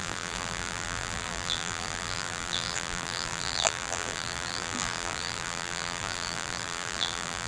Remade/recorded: remade